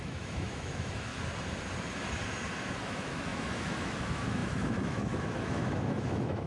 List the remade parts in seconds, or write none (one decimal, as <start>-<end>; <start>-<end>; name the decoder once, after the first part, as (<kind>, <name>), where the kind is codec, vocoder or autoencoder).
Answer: 0.0-1.1 (autoencoder, DAC-VAE); 2.8-6.5